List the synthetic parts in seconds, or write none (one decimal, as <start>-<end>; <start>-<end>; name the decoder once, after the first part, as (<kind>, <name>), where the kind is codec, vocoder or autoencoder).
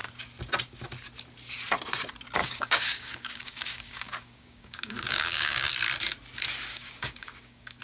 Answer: 2.4-5.7 (codec, DAC); 6.7-7.8